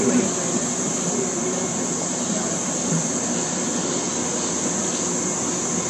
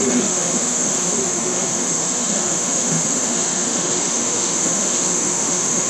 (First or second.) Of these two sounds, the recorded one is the first